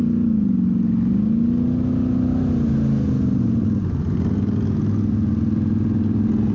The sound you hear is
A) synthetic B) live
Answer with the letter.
B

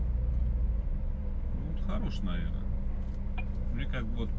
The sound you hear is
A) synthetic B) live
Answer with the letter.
B